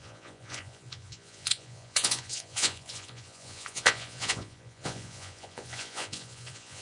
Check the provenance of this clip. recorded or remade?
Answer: remade